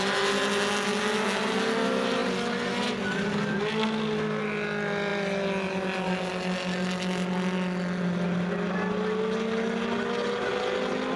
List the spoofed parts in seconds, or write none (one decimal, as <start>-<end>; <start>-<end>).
none